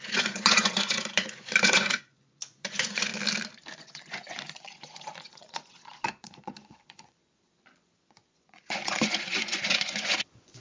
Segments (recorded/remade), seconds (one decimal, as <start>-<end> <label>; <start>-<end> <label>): 0.0-3.1 remade; 3.1-3.8 recorded; 3.8-10.6 remade